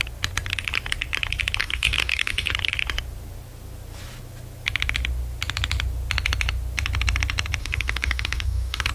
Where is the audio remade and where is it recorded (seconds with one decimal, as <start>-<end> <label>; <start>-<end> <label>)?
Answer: 0.0-1.6 recorded; 1.6-2.5 remade; 2.5-7.6 recorded; 7.6-8.9 remade